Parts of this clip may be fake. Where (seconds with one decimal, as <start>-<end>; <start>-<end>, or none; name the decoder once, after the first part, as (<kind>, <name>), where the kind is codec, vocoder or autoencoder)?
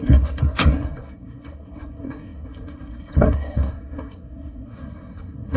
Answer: 0.0-5.6 (codec, SNAC)